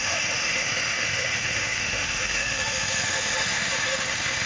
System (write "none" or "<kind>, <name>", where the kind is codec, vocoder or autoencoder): autoencoder, DAC-VAE